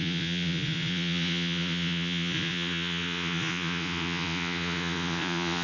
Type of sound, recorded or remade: remade